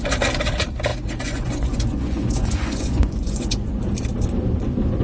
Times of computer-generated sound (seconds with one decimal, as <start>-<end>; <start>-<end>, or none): 0.9-3.8